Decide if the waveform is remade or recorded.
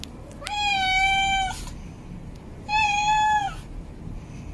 recorded